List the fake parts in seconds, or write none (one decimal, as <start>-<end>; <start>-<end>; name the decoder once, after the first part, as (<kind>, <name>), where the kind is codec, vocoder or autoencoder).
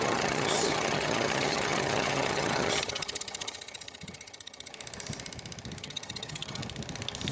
0.0-4.7 (vocoder, HiFi-GAN); 5.8-6.6